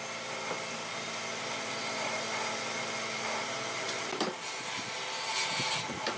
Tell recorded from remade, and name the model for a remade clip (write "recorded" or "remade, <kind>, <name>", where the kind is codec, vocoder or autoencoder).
recorded